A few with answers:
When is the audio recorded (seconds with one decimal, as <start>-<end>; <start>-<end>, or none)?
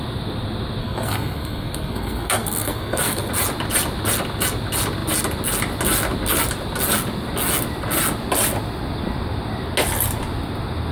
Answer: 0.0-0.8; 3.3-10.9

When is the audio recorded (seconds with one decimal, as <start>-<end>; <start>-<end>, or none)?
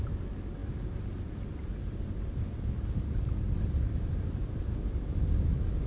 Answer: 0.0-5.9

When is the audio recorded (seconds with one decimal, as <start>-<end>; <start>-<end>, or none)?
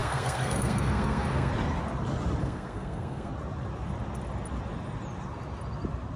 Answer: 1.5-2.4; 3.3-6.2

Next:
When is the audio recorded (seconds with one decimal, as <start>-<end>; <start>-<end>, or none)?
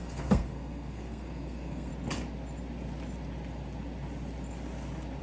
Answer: 1.9-5.2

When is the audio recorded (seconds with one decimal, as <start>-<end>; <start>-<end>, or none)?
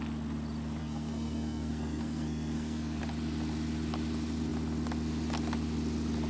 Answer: 0.0-0.8; 3.0-6.3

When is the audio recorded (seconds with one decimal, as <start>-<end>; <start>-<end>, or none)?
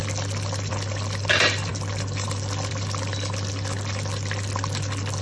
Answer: 0.0-5.2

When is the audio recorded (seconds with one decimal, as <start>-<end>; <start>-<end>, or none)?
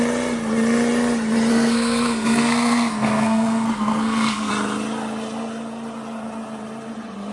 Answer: 0.0-1.5; 4.5-7.3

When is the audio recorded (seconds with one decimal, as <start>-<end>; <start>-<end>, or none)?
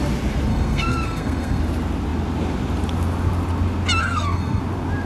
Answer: 0.0-0.5; 1.6-4.0; 4.6-5.1